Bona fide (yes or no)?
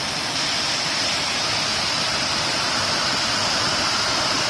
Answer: yes